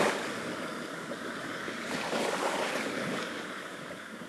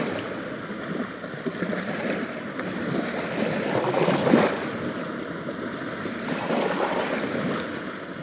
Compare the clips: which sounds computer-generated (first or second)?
first